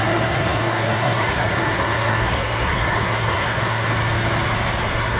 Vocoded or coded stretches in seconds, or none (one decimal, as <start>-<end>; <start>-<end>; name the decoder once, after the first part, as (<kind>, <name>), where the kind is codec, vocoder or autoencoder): 0.0-3.9 (codec, SNAC); 4.8-5.2